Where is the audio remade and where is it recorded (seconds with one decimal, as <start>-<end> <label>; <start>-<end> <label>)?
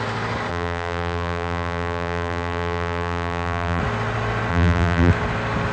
0.0-0.5 recorded; 0.5-3.8 remade; 3.8-4.5 recorded; 4.5-5.1 remade; 5.1-5.7 recorded